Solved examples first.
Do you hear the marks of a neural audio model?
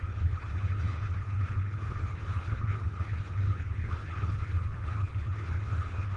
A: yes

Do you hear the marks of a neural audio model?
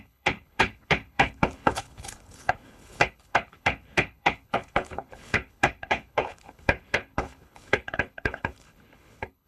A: yes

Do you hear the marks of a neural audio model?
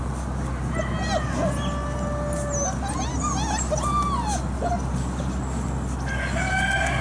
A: no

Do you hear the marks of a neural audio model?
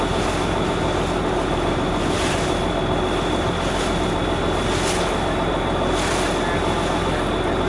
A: no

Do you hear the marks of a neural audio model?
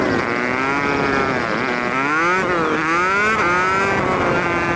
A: no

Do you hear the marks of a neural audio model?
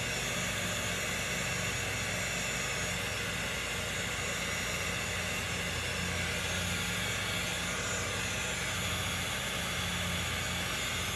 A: no